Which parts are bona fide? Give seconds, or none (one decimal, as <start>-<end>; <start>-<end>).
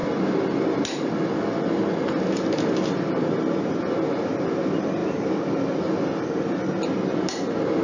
0.0-7.8